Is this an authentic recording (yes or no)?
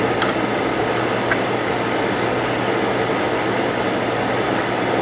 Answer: yes